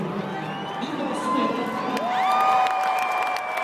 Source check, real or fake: real